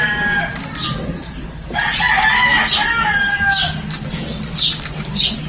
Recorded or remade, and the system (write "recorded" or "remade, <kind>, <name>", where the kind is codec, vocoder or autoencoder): recorded